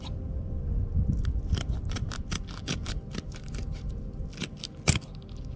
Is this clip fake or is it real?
real